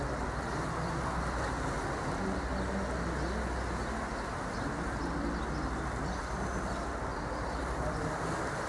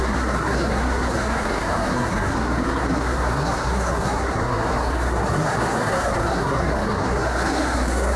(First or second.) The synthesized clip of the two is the second